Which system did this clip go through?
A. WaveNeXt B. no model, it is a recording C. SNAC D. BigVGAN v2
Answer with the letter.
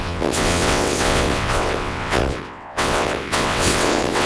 A